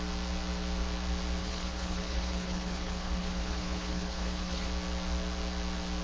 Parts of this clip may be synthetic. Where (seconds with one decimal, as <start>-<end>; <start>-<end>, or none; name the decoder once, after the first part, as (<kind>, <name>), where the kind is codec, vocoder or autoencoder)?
1.4-4.7 (codec, HILCodec)